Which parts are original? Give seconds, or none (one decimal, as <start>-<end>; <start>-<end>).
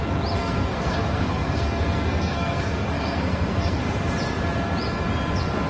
0.0-0.4; 3.8-5.7